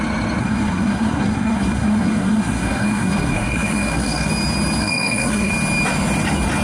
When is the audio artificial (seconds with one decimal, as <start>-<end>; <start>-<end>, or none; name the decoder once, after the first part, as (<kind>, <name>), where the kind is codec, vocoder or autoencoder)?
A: 0.4-4.3 (codec, SNAC); 4.8-5.5

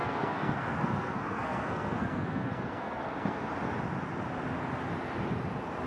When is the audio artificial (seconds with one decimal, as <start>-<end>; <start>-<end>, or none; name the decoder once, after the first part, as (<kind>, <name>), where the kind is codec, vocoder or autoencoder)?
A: 0.0-3.5 (codec, SNAC)

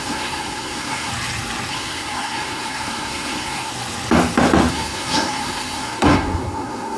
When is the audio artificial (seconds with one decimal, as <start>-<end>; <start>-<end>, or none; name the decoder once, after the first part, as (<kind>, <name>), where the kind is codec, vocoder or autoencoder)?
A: 0.0-1.1 (codec, SNAC); 1.7-3.7; 4.7-7.0

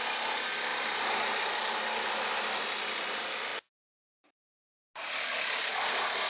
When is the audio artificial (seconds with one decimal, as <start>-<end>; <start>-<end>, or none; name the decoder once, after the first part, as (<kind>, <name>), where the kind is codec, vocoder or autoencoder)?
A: none

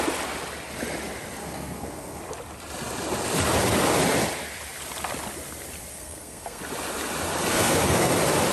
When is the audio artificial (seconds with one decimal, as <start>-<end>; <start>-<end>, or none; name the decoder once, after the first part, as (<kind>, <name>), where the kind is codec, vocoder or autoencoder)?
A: 1.4-2.2 (codec, SNAC); 5.9-6.6; 7.5-8.1

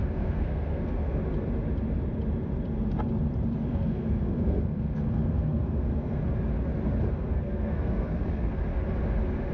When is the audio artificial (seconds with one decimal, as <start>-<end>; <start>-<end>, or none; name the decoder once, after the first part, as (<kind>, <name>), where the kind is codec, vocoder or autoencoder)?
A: 0.0-1.2 (codec, SNAC); 3.6-6.2; 7.1-8.6